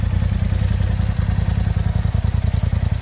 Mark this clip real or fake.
real